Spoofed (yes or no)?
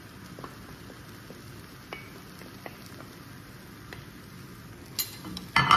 no